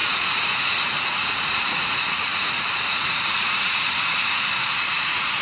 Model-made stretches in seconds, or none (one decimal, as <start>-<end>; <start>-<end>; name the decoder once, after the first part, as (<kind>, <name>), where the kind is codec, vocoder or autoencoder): 0.0-5.4 (vocoder, Vocos)